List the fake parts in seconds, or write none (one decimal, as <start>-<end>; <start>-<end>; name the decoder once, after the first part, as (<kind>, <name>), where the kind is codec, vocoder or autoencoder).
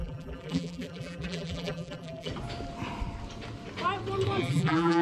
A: 0.0-2.3 (vocoder, BigVGAN v2); 4.4-5.0